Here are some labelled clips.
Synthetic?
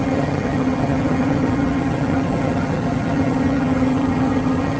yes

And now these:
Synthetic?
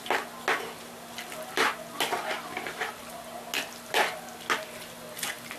no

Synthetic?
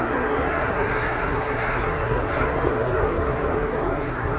yes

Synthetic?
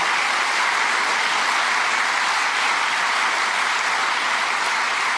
no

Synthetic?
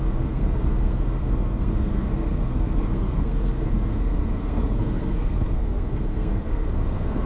yes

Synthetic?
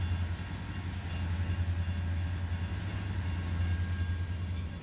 no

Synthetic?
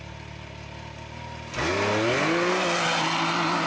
no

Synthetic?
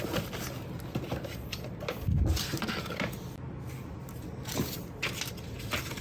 no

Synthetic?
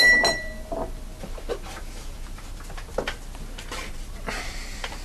no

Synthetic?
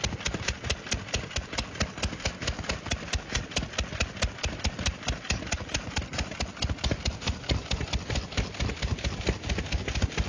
no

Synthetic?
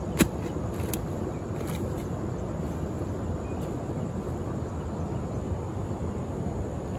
no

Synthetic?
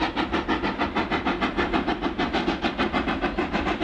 no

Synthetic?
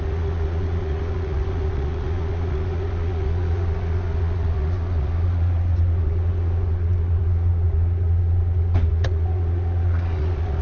yes